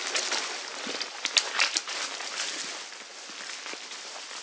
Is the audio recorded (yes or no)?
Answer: yes